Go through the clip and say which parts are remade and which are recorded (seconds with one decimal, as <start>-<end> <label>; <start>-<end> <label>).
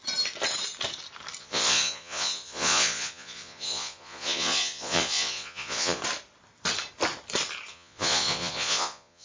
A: 0.0-1.4 recorded; 1.4-6.0 remade; 6.0-7.7 recorded; 7.7-9.2 remade